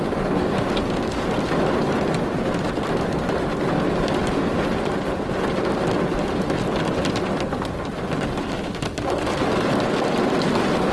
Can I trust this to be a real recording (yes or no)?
yes